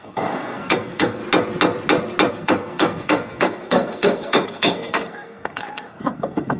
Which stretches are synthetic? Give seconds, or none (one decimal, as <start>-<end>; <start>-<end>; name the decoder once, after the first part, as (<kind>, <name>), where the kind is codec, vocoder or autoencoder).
0.0-1.2 (codec, SNAC); 2.3-6.6

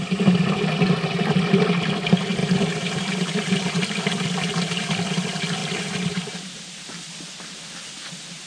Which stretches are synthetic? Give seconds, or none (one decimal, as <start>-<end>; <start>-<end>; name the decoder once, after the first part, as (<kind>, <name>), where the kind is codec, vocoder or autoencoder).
2.4-3.6 (vocoder, BigVGAN v2); 5.6-6.6

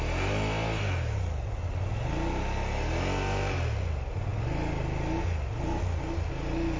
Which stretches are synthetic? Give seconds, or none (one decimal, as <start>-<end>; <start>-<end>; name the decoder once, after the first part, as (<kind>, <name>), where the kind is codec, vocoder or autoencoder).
none

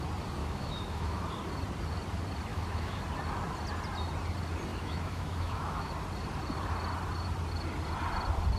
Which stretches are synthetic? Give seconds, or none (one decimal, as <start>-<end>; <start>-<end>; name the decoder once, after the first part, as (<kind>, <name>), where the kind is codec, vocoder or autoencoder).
0.4-1.2 (autoencoder, DAC-VAE); 2.5-3.0; 4.7-5.9

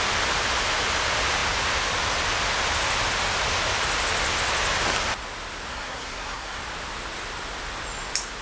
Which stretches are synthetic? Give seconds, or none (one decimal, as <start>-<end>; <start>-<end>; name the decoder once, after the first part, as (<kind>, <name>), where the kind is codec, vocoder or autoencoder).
5.7-6.6 (codec, SNAC)